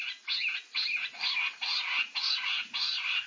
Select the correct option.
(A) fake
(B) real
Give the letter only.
B